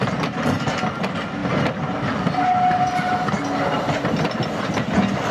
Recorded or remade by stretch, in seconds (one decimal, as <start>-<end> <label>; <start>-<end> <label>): 0.0-5.3 recorded